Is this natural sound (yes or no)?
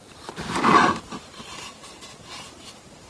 no